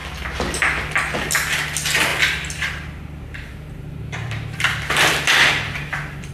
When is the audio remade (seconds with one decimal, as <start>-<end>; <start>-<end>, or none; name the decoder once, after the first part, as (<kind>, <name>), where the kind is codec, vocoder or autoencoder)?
2.1-6.3 (vocoder, BigVGAN v2)

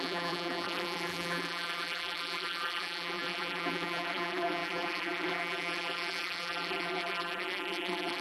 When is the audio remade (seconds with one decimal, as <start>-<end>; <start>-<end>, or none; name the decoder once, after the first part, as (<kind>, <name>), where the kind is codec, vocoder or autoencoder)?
0.0-8.2 (vocoder, BigVGAN v2)

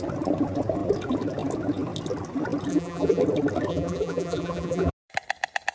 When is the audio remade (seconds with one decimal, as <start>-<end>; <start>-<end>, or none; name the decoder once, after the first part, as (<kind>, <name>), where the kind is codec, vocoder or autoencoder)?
2.7-3.2 (vocoder, BigVGAN v2); 3.7-4.9

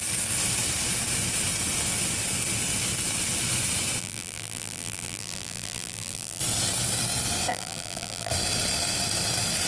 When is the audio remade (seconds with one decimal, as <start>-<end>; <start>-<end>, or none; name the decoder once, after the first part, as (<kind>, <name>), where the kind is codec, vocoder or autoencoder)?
4.0-6.4 (vocoder, BigVGAN v2); 7.5-8.3

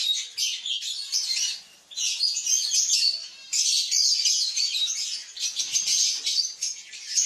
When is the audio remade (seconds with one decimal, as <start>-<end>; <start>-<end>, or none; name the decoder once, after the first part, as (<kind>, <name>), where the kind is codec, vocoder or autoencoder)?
3.2-6.4 (vocoder, BigVGAN v2)